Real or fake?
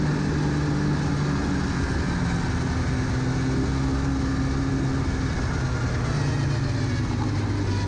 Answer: real